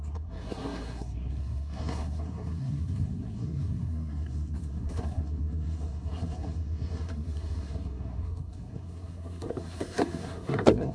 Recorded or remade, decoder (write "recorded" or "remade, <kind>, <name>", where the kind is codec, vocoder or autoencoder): remade, codec, SNAC